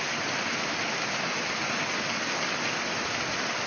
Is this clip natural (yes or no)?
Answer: yes